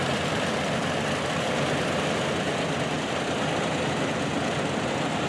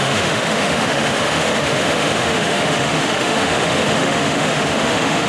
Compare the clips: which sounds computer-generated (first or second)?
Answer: second